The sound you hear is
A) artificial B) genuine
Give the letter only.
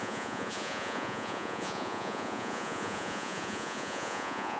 A